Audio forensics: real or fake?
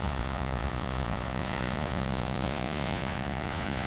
fake